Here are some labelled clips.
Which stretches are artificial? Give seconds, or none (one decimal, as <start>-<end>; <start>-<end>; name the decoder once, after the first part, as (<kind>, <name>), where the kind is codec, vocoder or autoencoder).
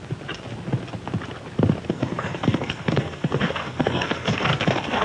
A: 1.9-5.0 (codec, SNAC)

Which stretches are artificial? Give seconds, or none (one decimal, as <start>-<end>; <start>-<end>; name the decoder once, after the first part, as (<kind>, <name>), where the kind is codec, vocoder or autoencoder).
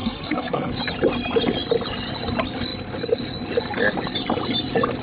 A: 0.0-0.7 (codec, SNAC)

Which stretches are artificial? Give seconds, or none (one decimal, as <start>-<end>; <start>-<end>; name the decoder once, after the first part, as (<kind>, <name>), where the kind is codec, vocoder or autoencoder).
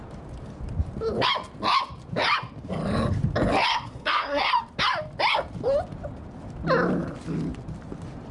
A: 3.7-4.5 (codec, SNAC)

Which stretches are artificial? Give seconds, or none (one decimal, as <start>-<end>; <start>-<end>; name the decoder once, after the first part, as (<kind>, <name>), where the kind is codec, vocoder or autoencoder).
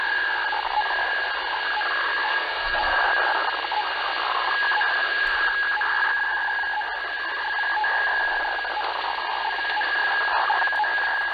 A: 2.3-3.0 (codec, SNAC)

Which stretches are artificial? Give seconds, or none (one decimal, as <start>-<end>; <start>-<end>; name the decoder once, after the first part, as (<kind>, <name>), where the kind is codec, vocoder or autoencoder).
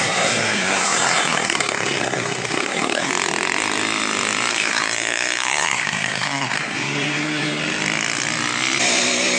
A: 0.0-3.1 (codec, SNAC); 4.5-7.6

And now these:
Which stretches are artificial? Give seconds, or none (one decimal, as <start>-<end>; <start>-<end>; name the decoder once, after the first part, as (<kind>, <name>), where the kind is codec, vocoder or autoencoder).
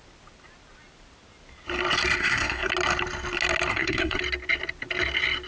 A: 2.2-2.7 (codec, SNAC); 3.7-4.2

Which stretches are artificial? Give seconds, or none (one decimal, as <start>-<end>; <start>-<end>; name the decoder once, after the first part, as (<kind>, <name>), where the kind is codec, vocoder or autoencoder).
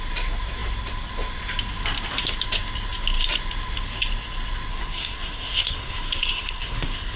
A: 4.7-7.2 (codec, SNAC)